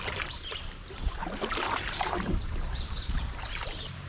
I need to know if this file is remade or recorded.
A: remade